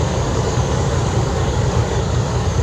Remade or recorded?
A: remade